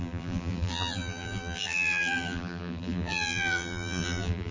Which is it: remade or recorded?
remade